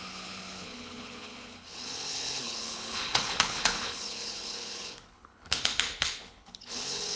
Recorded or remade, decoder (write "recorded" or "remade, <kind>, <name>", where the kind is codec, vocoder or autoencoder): remade, codec, HILCodec